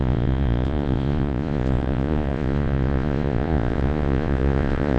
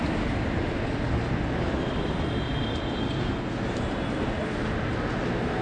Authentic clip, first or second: second